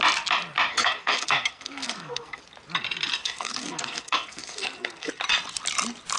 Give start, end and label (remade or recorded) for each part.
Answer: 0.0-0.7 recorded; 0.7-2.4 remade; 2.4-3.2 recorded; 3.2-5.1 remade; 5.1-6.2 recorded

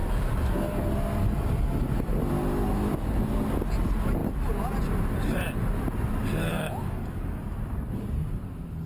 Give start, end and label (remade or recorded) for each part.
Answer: 0.0-6.5 recorded; 6.5-7.4 remade; 7.4-8.9 recorded

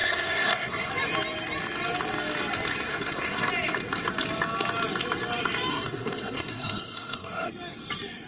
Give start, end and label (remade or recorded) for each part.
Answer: 0.0-0.9 remade; 0.9-2.9 recorded; 2.9-3.5 remade; 3.5-5.7 recorded; 5.7-7.5 remade; 7.5-8.3 recorded

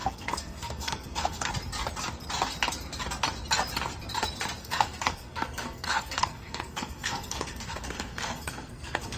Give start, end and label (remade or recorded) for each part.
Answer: 0.0-1.5 remade; 1.5-4.6 recorded; 4.6-9.2 remade